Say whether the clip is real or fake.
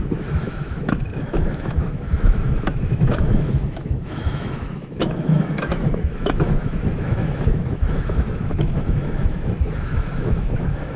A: fake